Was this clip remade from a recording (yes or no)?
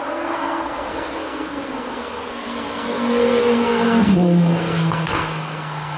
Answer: yes